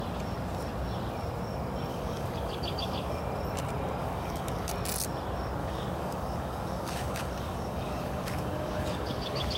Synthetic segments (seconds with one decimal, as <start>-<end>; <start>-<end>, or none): 1.9-3.2; 4.0-4.7; 5.6-9.6